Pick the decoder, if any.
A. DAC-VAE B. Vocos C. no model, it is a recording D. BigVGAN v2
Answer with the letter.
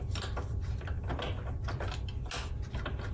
C